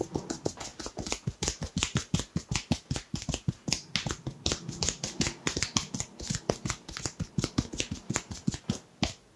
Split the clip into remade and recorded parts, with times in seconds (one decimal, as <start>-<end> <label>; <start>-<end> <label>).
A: 0.0-9.4 recorded

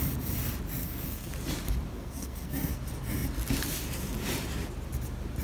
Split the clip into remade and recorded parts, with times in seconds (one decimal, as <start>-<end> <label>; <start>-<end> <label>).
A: 0.0-0.8 recorded; 0.8-1.3 remade; 1.3-1.9 recorded; 1.9-2.8 remade; 2.8-5.4 recorded